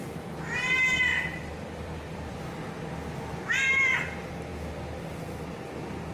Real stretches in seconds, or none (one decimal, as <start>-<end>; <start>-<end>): 0.0-1.1; 2.4-6.1